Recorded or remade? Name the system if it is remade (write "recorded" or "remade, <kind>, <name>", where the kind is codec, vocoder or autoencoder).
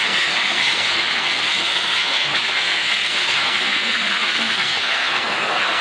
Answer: remade, codec, SNAC